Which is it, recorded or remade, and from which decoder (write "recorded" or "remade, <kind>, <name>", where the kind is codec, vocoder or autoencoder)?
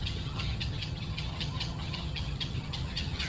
remade, vocoder, HiFi-GAN